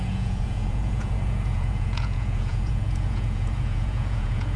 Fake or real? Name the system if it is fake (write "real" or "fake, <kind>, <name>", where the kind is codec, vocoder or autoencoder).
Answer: fake, vocoder, Vocos